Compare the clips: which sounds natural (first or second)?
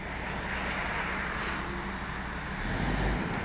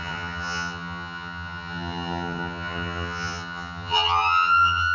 first